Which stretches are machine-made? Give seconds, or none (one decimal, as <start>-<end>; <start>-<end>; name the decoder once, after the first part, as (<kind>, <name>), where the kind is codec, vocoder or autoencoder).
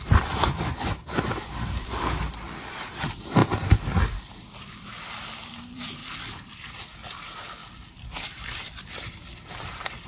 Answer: 0.0-3.4 (vocoder, BigVGAN v2); 4.2-6.0; 6.7-7.6; 8.2-10.1